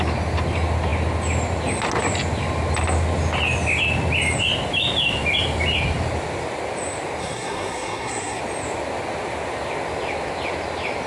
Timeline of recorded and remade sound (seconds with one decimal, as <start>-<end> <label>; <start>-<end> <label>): 0.0-7.2 recorded; 7.2-8.4 remade; 8.4-11.1 recorded